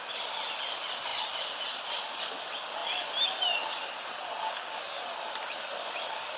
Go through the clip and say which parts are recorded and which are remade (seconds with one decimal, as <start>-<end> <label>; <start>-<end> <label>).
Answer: 0.0-6.4 recorded

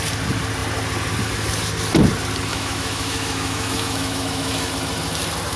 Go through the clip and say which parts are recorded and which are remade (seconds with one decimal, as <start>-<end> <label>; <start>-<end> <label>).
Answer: 0.0-2.5 recorded; 2.5-4.7 remade; 4.7-5.6 recorded

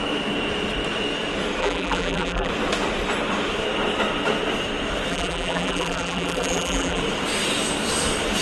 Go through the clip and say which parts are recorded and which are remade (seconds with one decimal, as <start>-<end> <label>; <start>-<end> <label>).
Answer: 0.0-1.6 recorded; 1.6-2.5 remade; 2.5-5.1 recorded; 5.1-7.0 remade; 7.0-8.4 recorded

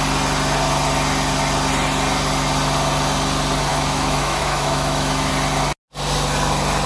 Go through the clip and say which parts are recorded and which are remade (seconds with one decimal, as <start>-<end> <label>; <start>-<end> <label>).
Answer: 0.0-3.7 recorded; 3.7-5.3 remade; 5.3-6.9 recorded

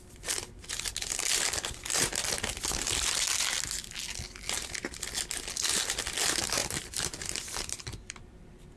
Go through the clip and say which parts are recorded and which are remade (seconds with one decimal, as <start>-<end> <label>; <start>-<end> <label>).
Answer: 0.0-6.6 recorded; 6.6-8.2 remade; 8.2-8.8 recorded

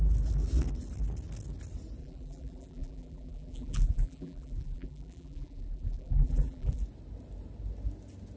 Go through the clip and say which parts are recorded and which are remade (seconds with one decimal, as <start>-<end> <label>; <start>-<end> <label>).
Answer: 0.0-2.0 recorded; 2.0-6.8 remade; 6.8-8.4 recorded

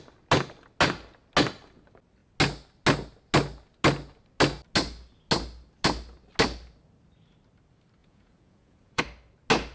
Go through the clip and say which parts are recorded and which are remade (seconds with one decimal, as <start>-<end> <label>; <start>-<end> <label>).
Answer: 0.0-8.0 recorded; 8.0-9.0 remade; 9.0-9.7 recorded

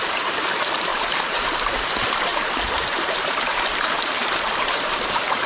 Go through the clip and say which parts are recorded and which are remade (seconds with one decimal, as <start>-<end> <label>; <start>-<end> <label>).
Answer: 0.0-5.5 remade